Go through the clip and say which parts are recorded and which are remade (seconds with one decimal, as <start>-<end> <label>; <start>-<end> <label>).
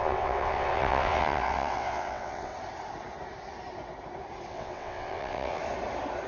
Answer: 0.0-2.5 remade; 2.5-4.5 recorded; 4.5-5.6 remade; 5.6-6.3 recorded